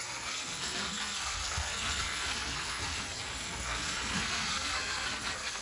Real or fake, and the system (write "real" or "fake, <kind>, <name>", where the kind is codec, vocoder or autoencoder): fake, codec, SNAC